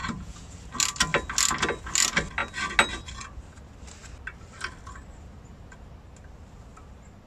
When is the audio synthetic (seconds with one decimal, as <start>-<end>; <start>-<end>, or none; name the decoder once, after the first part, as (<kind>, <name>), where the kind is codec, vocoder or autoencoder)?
0.0-0.6 (vocoder, Vocos)